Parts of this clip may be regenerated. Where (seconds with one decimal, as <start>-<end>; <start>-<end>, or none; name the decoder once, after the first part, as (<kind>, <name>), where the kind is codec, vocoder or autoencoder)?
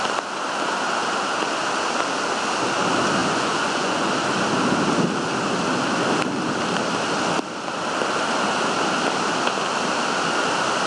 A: 3.2-4.1 (vocoder, Vocos)